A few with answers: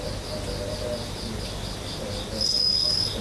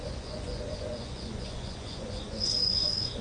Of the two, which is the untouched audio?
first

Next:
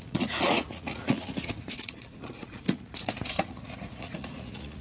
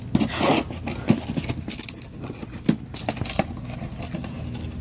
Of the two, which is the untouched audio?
second